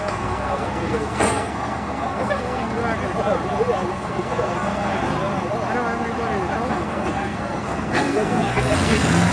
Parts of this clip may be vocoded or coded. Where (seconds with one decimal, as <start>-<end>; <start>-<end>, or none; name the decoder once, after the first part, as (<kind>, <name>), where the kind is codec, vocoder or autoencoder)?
0.0-2.8 (codec, SNAC); 3.9-4.9; 6.7-9.3